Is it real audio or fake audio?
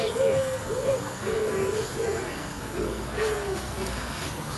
fake